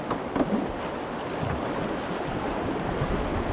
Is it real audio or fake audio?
real